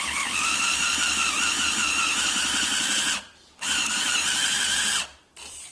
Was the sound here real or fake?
fake